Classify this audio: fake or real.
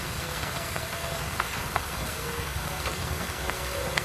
fake